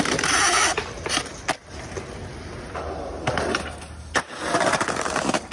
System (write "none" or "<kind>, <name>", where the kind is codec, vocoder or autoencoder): none